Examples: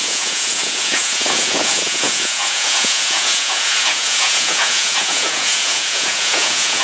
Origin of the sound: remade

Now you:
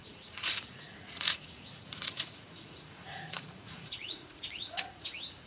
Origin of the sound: remade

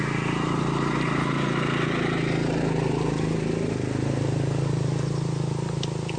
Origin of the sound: recorded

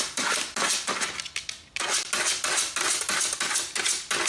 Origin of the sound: recorded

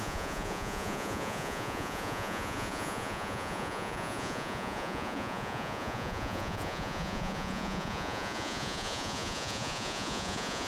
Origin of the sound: remade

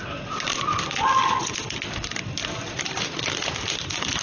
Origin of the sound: recorded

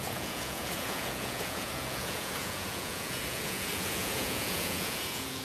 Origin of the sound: remade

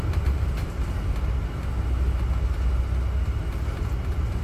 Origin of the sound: recorded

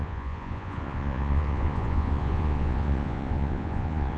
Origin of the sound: remade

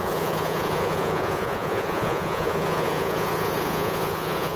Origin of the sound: remade